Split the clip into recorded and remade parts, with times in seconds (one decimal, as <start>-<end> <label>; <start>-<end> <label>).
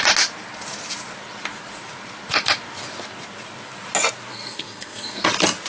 0.0-4.3 recorded; 4.3-5.2 remade; 5.2-5.7 recorded